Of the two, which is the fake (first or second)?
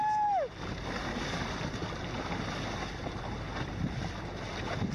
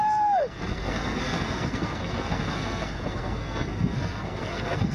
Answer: second